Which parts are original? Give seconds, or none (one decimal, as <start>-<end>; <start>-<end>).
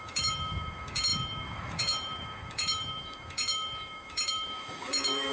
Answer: none